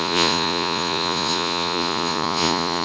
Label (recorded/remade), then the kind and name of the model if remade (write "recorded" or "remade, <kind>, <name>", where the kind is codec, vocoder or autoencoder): remade, vocoder, Vocos